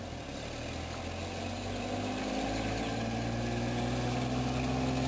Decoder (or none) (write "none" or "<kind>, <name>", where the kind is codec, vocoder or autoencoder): none